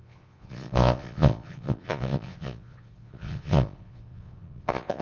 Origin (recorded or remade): remade